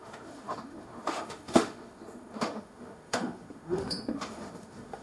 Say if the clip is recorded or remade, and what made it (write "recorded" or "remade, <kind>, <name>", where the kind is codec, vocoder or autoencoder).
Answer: remade, autoencoder, DAC-VAE